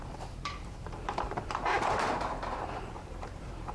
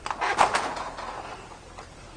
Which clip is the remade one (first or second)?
first